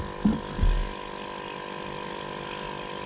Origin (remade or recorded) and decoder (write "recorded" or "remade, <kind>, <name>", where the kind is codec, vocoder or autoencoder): recorded